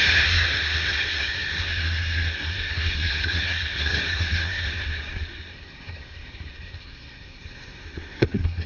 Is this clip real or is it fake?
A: fake